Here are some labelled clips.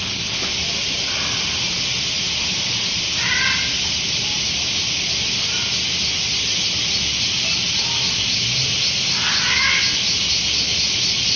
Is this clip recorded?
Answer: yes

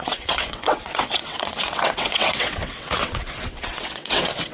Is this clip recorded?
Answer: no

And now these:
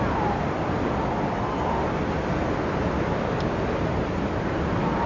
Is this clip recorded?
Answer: yes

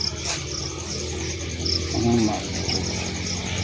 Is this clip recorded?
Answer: yes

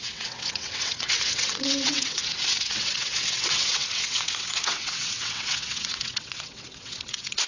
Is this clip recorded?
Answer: no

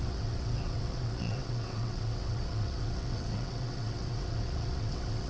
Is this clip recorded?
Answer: no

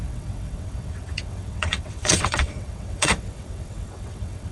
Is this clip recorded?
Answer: no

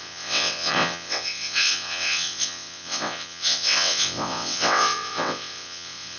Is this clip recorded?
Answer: no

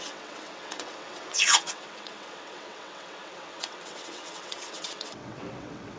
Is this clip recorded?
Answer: no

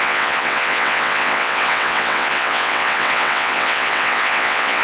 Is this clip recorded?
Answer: no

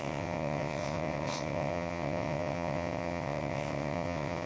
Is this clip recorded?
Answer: no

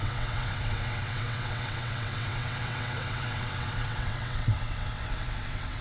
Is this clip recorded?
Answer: no